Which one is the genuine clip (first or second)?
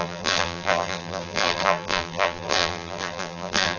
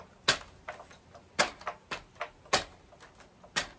second